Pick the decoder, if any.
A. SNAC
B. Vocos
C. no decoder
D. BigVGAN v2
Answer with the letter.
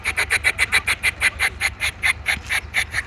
C